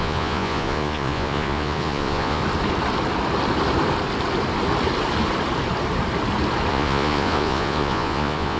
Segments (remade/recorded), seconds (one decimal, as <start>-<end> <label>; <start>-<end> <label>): 0.0-2.4 remade; 2.4-6.7 recorded; 6.7-8.6 remade